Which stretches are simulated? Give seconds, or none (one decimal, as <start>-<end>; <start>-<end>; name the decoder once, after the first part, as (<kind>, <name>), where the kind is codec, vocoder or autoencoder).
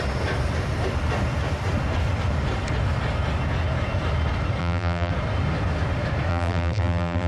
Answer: 4.6-5.1 (vocoder, BigVGAN v2); 6.3-7.3